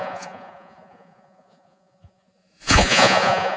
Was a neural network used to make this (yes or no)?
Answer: yes